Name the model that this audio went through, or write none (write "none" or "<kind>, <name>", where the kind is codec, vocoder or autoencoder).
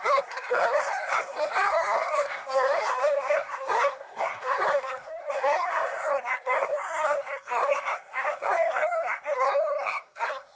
codec, SNAC